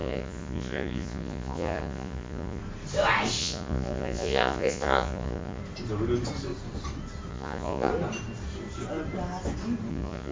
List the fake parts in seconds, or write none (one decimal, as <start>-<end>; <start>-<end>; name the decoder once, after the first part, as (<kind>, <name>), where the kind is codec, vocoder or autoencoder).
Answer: 0.0-2.6 (vocoder, Vocos); 3.4-5.6; 7.3-7.9; 9.9-10.3